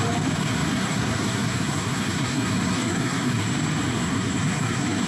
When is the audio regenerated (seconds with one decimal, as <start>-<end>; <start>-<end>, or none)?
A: 0.4-3.5; 3.9-5.1